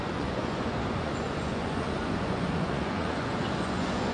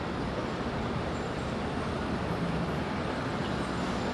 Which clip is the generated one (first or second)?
first